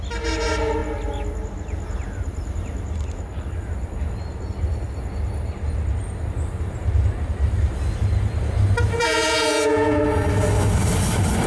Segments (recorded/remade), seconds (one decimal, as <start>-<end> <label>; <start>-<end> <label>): 0.0-9.0 recorded; 9.0-10.0 remade; 10.0-11.5 recorded